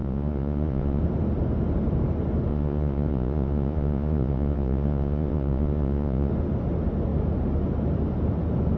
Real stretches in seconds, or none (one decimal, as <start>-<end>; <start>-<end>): 1.0-2.5; 6.3-8.8